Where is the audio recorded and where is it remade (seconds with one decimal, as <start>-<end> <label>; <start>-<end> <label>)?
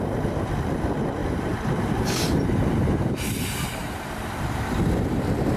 0.0-1.2 recorded; 1.2-3.3 remade; 3.3-3.8 recorded; 3.8-4.4 remade; 4.4-5.6 recorded